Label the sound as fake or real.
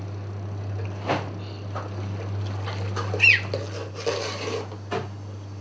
real